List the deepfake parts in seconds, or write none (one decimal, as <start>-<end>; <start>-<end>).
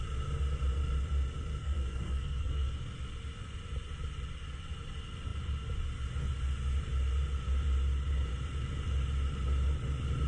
1.6-2.7